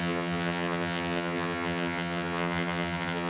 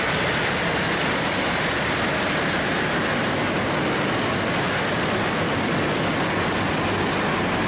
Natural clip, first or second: second